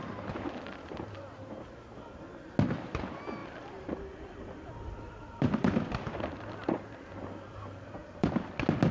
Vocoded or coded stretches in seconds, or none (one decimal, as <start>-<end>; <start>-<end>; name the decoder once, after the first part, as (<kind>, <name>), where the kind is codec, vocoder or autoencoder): 3.4-7.1 (vocoder, BigVGAN v2); 8.0-8.5